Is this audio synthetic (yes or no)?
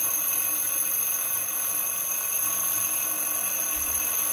no